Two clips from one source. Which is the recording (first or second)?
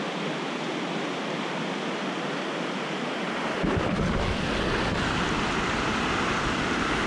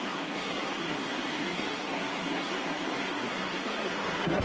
first